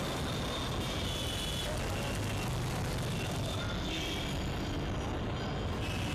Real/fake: real